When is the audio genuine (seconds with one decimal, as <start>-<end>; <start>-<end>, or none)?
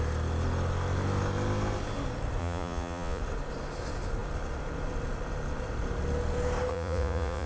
0.0-2.4; 3.2-6.7